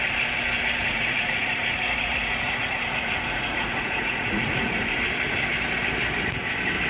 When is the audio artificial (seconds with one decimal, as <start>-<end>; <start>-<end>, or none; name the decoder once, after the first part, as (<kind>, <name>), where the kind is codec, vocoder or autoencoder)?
0.9-5.0 (vocoder, Vocos)